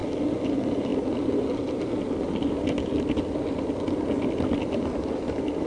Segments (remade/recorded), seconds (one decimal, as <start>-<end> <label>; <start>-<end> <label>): 0.0-5.7 recorded